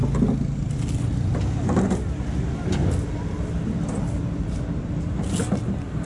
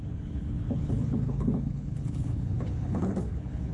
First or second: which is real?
first